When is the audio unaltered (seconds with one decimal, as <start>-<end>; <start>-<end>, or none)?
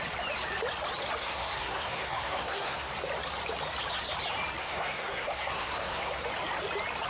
0.0-1.2; 2.9-4.6; 6.2-7.1